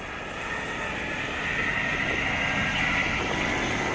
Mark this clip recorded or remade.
recorded